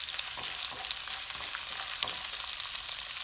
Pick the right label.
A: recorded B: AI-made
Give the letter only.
A